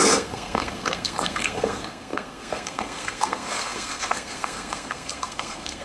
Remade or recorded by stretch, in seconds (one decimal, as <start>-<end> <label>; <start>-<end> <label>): 0.0-5.8 remade